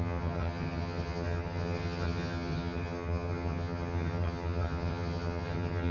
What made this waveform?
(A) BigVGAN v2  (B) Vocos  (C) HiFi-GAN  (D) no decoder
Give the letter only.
C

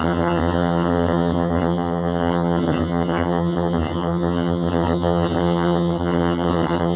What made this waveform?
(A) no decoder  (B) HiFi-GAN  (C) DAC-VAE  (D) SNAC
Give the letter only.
B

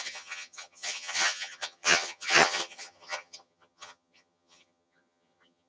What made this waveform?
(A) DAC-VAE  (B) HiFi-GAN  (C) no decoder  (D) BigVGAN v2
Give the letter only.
B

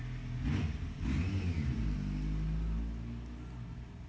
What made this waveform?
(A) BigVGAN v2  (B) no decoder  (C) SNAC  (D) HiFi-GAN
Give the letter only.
B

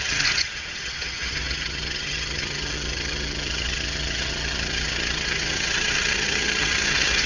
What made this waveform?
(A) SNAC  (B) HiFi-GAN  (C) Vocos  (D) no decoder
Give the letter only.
B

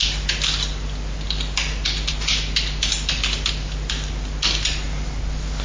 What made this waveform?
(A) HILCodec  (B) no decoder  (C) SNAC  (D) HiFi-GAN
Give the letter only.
B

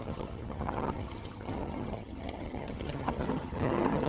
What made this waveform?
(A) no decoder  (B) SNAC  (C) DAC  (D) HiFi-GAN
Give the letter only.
D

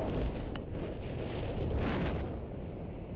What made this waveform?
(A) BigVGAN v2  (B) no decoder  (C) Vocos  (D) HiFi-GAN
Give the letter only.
B